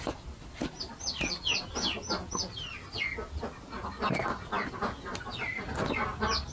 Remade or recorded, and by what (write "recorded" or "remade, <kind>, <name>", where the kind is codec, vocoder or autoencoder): recorded